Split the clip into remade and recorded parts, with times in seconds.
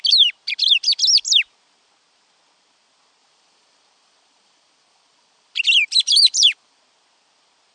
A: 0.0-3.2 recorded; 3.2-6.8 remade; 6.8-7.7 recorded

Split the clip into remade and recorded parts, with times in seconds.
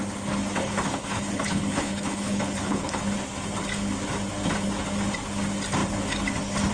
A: 0.0-0.6 recorded; 0.6-3.0 remade; 3.0-6.7 recorded